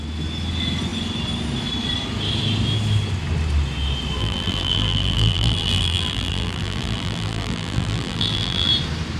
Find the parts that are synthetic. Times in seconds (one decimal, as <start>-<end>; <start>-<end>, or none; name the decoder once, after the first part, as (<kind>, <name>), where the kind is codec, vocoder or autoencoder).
4.2-8.7 (vocoder, BigVGAN v2)